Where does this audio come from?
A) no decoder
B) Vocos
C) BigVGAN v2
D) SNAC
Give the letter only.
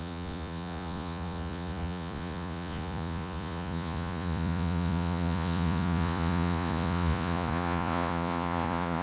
B